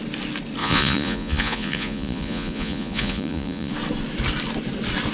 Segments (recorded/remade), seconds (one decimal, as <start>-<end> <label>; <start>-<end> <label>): 0.0-0.6 recorded; 0.6-3.7 remade; 3.7-5.1 recorded